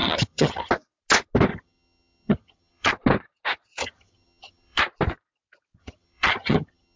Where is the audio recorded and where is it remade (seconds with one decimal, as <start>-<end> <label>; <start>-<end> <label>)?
0.0-0.7 remade; 0.7-1.5 recorded; 1.5-2.9 remade; 2.9-3.8 recorded; 3.8-4.8 remade; 4.8-5.8 recorded; 5.8-7.0 remade